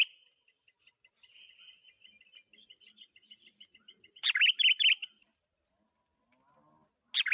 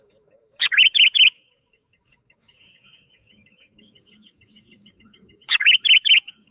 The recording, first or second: first